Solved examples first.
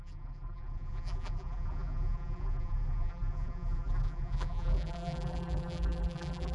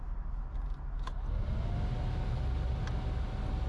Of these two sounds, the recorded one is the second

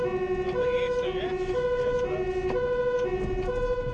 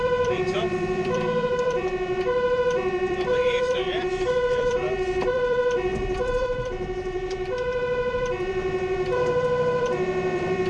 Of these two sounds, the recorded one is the first